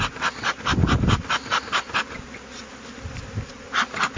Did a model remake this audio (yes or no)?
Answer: no